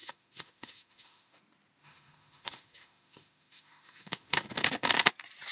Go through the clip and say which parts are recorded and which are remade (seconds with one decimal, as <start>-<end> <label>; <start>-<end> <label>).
0.0-1.4 remade; 1.4-1.8 recorded; 1.8-5.1 remade; 5.1-5.5 recorded